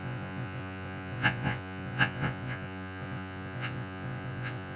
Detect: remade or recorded remade